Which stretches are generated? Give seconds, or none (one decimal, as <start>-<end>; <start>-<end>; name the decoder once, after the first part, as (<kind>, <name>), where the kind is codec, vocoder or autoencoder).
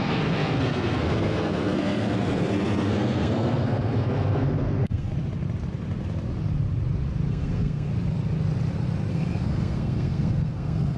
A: 0.0-5.1 (codec, SNAC); 7.3-7.9; 9.1-11.0